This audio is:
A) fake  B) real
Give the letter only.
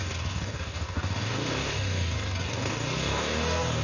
A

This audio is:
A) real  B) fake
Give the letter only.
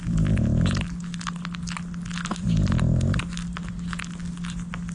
A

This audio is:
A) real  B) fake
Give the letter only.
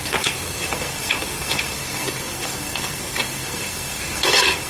B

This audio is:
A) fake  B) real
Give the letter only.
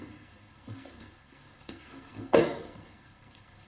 A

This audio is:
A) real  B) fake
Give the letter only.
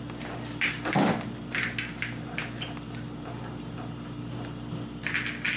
A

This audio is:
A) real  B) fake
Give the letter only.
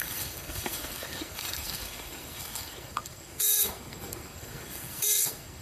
B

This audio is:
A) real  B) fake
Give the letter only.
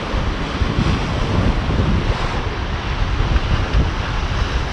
A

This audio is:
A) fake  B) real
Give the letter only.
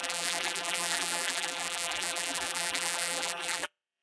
A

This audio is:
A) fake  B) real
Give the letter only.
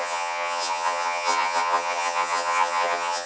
A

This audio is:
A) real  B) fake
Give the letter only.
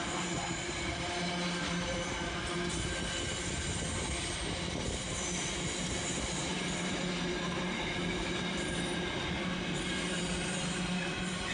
A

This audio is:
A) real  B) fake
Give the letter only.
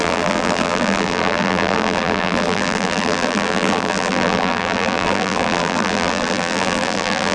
B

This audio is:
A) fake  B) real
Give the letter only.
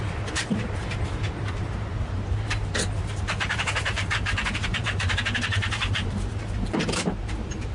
A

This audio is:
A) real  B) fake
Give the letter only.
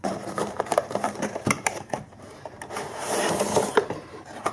B